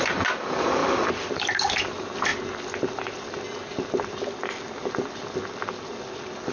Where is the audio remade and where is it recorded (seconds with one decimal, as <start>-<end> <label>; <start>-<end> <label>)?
0.0-0.8 recorded; 0.8-1.4 remade; 1.4-6.5 recorded